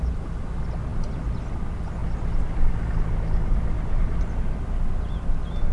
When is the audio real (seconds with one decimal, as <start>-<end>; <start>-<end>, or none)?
0.0-5.7